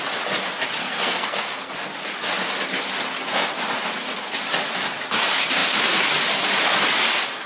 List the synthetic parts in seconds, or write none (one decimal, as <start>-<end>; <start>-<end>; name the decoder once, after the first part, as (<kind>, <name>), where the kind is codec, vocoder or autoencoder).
0.8-1.7 (codec, SNAC)